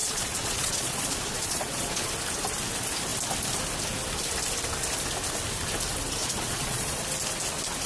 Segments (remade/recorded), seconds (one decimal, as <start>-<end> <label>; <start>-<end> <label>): 0.0-2.1 remade; 2.1-6.2 recorded; 6.2-7.0 remade; 7.0-7.9 recorded